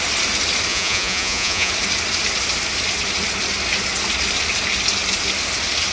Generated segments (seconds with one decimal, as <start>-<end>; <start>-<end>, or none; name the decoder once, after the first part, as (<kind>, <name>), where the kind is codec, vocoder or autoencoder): 0.7-1.7 (vocoder, Vocos)